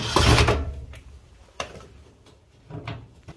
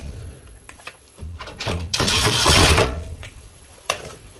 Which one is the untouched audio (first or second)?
first